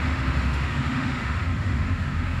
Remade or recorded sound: remade